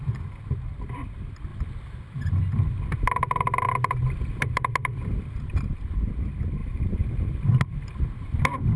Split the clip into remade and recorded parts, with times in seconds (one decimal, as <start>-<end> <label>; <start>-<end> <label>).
0.0-4.0 recorded; 4.0-5.8 remade; 5.8-6.6 recorded; 6.6-7.5 remade; 7.5-8.8 recorded